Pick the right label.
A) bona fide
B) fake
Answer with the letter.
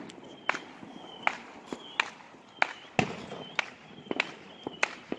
A